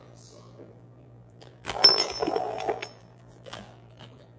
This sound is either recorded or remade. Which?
remade